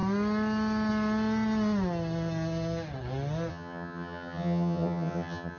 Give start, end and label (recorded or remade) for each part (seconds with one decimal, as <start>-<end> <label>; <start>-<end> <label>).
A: 0.0-3.5 recorded; 3.5-5.6 remade

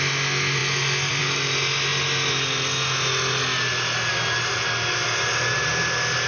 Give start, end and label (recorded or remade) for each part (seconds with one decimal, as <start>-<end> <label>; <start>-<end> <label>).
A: 0.0-6.3 recorded

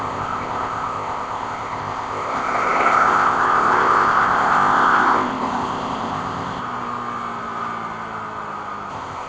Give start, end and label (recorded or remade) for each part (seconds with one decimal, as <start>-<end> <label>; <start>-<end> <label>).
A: 0.0-6.6 remade; 6.6-8.9 recorded; 8.9-9.3 remade

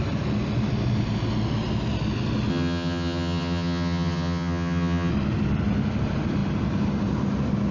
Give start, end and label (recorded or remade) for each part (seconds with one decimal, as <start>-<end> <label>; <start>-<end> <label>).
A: 0.0-2.5 recorded; 2.5-5.1 remade; 5.1-7.7 recorded

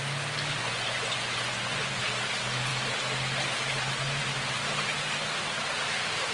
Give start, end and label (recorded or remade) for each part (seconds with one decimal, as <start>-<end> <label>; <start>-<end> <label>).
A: 0.0-0.6 recorded; 0.6-2.0 remade; 2.0-6.3 recorded

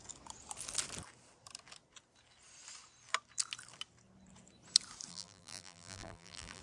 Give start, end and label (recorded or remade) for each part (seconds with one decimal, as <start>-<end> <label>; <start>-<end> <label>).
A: 0.0-5.1 recorded; 5.1-6.6 remade

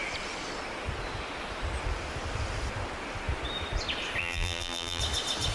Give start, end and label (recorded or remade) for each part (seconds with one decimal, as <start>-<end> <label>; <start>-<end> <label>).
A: 0.0-4.2 recorded; 4.2-5.0 remade; 5.0-5.5 recorded